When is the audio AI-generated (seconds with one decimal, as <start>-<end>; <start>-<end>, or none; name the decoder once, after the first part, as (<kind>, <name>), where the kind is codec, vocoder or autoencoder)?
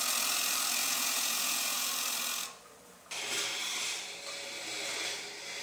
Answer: 0.8-1.9 (vocoder, Vocos)